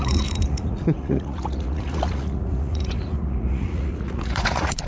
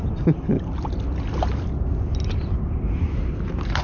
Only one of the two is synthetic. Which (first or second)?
first